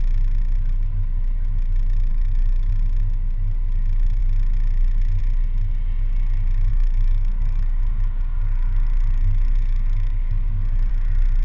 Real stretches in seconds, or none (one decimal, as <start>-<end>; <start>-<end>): 0.0-2.1; 2.7-6.7; 10.9-11.4

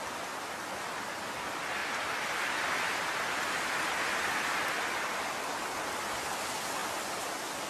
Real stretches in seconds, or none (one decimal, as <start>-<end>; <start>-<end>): 0.0-7.7